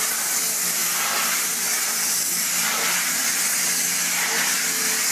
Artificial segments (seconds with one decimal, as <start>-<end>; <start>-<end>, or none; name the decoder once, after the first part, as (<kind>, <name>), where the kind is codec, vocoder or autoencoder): none